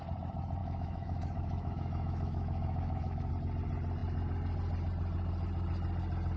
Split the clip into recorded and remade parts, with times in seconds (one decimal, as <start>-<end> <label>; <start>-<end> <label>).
0.0-0.6 recorded; 0.6-3.3 remade; 3.3-6.4 recorded

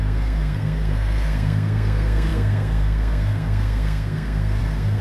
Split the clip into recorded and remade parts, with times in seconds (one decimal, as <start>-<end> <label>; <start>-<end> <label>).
0.0-5.0 remade

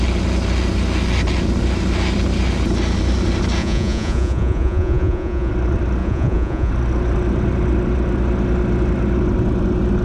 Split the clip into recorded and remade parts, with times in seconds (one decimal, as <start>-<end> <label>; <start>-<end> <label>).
0.0-3.6 recorded; 3.6-5.5 remade; 5.5-6.0 recorded; 6.0-6.7 remade; 6.7-10.0 recorded

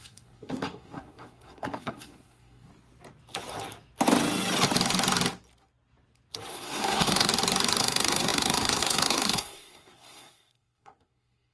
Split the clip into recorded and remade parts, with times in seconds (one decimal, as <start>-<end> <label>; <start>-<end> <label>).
0.0-2.7 remade; 2.7-6.5 recorded; 6.5-7.3 remade; 7.3-7.8 recorded; 7.8-11.5 remade

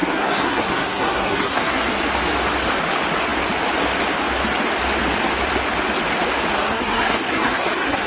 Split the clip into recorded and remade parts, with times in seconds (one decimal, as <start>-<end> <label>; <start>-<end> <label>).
0.0-2.0 remade; 2.0-6.5 recorded; 6.5-8.1 remade